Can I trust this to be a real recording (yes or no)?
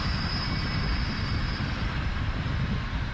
yes